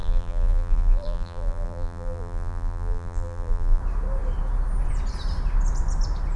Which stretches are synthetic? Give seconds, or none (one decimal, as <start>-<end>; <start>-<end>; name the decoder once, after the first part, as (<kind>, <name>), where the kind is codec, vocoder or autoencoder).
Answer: 0.0-3.8 (vocoder, BigVGAN v2)